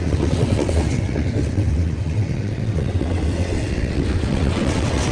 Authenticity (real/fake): fake